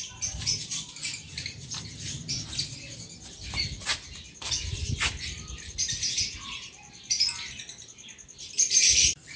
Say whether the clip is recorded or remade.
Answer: recorded